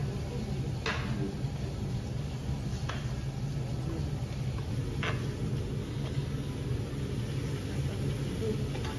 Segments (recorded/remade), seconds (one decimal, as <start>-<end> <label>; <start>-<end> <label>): 0.0-5.8 recorded; 5.8-6.5 remade; 6.5-9.0 recorded